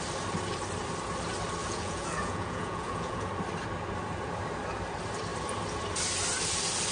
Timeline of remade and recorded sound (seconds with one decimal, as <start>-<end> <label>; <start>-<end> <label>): 0.0-1.6 recorded; 1.6-3.3 remade; 3.3-6.9 recorded